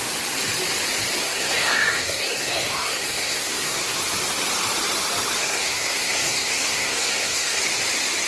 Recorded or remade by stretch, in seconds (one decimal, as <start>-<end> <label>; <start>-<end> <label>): 0.0-1.2 recorded; 1.2-4.0 remade; 4.0-5.4 recorded; 5.4-7.6 remade; 7.6-8.3 recorded